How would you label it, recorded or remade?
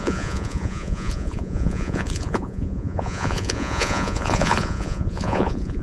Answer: remade